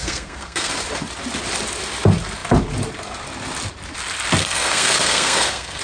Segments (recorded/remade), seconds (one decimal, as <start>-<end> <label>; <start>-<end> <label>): 0.0-0.7 remade; 0.7-4.4 recorded; 4.4-5.8 remade